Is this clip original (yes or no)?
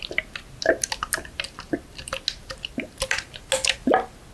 yes